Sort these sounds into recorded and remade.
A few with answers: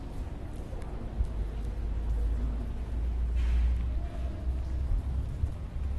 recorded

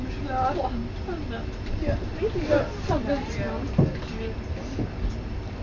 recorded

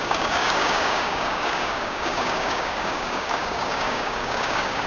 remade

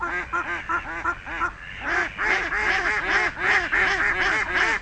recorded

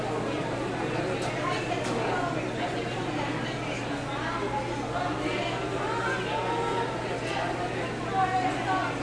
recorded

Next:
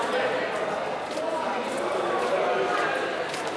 recorded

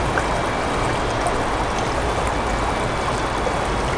recorded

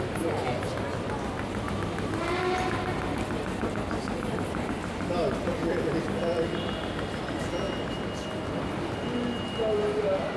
recorded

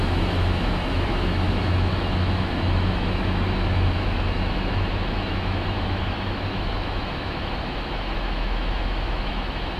remade